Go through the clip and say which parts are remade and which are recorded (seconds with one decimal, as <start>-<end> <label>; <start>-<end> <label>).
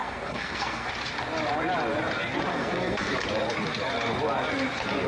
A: 0.0-0.9 remade; 0.9-2.5 recorded; 2.5-3.1 remade; 3.1-5.1 recorded